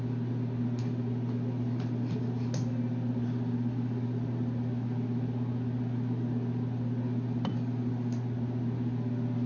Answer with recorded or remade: recorded